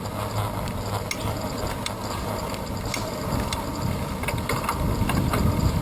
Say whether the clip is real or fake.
real